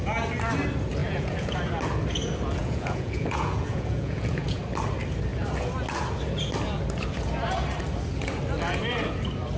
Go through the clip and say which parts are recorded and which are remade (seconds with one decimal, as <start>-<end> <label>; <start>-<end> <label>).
0.0-1.0 recorded; 1.0-1.6 remade; 1.6-2.6 recorded; 2.6-4.6 remade; 4.6-9.6 recorded